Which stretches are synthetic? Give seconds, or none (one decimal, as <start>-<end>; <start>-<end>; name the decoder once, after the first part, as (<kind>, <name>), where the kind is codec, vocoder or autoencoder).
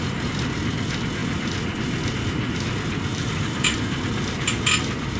1.2-2.1 (vocoder, BigVGAN v2); 3.1-4.2